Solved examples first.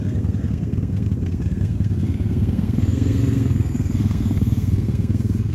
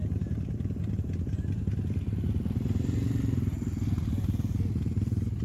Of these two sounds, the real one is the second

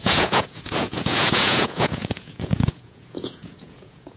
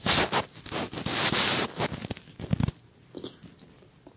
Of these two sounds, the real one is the second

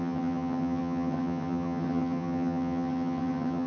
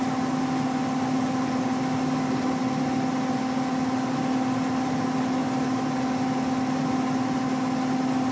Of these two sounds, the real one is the second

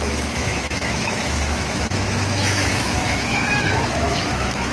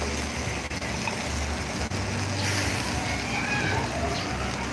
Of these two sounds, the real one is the second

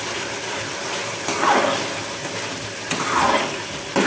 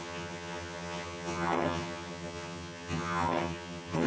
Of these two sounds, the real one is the first